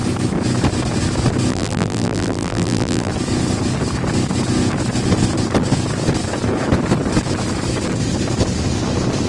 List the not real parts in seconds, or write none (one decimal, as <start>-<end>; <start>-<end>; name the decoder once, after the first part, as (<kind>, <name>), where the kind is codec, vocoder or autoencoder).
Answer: 1.5-3.1 (vocoder, BigVGAN v2)